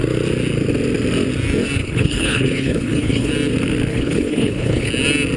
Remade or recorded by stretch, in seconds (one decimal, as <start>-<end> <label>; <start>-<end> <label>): 0.0-1.8 recorded; 1.8-3.3 remade; 3.3-3.9 recorded; 3.9-4.9 remade; 4.9-5.4 recorded